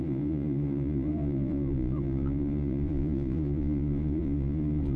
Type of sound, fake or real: fake